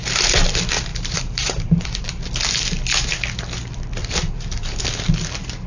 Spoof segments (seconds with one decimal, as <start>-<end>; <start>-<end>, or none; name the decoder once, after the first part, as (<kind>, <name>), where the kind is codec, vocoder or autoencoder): 0.9-2.2 (vocoder, BigVGAN v2); 4.0-4.8